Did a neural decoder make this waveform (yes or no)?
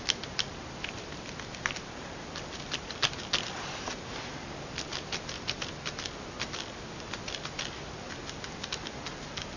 no